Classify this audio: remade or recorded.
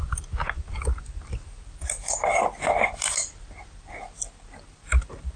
recorded